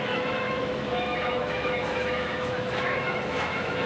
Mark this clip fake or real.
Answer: fake